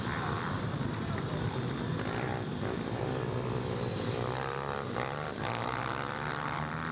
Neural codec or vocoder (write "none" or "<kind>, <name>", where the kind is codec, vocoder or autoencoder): vocoder, BigVGAN v2